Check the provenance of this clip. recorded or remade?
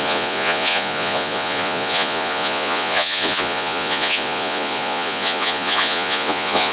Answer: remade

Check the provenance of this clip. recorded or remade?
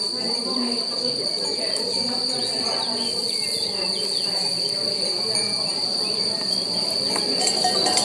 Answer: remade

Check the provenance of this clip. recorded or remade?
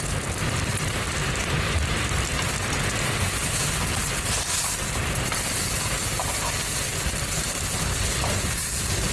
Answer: recorded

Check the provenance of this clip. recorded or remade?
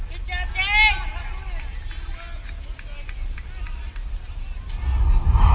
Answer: recorded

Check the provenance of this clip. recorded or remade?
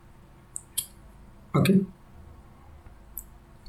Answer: recorded